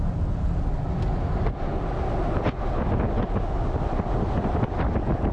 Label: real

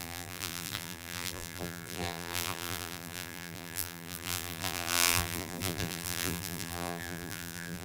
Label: fake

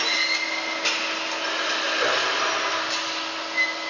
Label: real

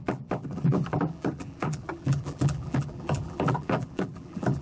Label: fake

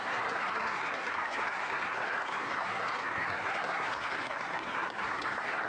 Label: fake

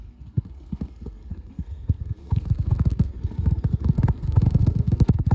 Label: fake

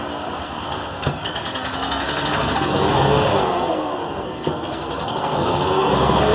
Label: fake